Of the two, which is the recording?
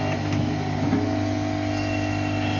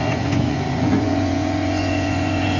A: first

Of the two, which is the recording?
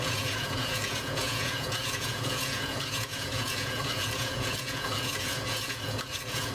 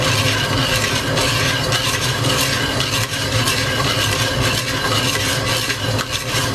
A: second